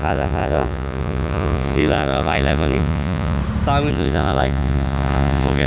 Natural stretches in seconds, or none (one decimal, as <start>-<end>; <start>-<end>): 3.4-3.9